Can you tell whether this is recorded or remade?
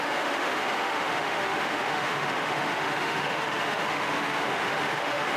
remade